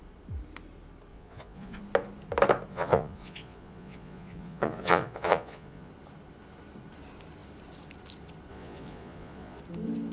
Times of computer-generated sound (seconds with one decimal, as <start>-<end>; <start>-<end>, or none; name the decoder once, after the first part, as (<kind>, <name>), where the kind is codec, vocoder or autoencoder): 1.1-1.8 (vocoder, Vocos); 2.7-5.9; 8.5-9.6